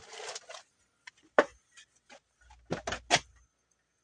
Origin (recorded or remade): recorded